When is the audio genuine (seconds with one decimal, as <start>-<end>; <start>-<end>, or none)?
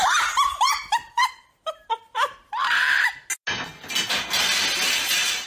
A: 3.3-5.5